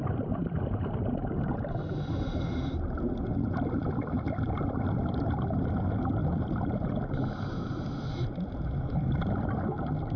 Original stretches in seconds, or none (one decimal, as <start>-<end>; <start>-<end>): 0.0-10.2

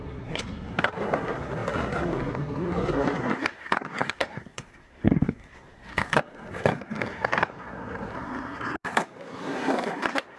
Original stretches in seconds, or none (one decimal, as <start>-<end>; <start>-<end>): none